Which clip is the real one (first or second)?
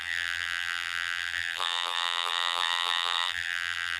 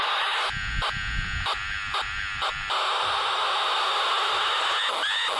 second